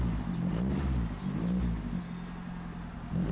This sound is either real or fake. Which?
real